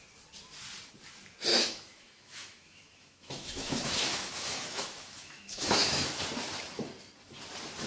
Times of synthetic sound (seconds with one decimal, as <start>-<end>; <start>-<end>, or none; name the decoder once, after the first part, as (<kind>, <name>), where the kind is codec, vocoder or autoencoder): 1.5-6.2 (autoencoder, DAC-VAE)